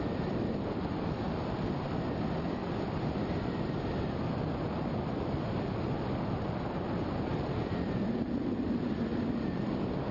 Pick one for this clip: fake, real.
real